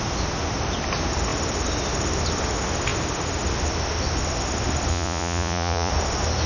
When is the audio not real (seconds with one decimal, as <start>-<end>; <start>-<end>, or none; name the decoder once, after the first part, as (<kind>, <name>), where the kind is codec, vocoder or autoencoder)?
4.9-5.9 (vocoder, Vocos)